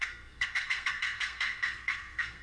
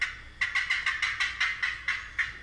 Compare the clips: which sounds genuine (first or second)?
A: second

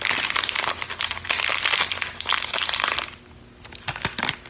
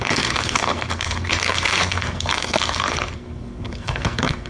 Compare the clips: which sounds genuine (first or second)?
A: first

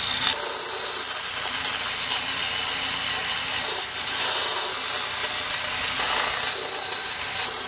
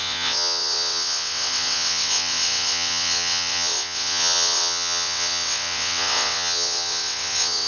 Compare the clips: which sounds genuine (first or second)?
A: first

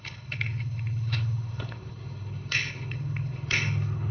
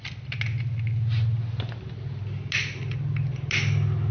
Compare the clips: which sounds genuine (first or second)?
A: second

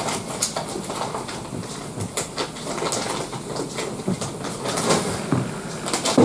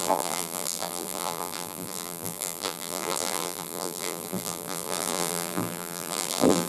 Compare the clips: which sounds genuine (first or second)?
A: first